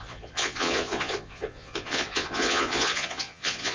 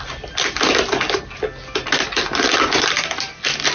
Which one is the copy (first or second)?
first